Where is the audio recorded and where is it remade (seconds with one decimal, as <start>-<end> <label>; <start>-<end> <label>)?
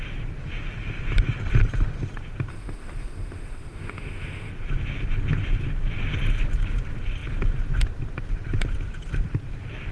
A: 0.0-2.5 recorded; 2.5-4.5 remade; 4.5-9.9 recorded